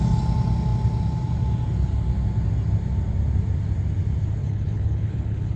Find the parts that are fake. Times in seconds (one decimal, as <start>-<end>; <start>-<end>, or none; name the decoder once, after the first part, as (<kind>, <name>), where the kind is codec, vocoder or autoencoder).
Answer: 4.4-5.6 (codec, HILCodec)